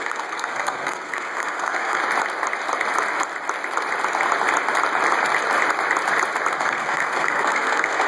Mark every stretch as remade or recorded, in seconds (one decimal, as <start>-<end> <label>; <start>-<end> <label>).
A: 0.0-2.0 remade; 2.0-6.5 recorded; 6.5-8.1 remade